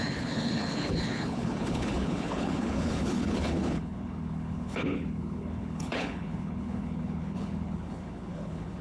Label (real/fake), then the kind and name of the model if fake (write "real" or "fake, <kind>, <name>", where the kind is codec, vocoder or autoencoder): fake, codec, HILCodec